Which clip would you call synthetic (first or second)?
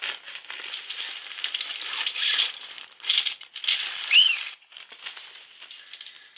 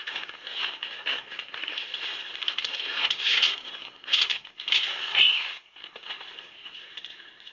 second